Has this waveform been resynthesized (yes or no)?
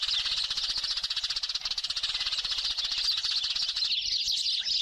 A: no